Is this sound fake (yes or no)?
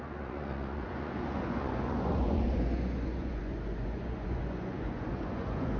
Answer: yes